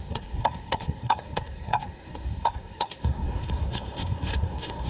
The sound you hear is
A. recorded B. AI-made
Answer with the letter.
B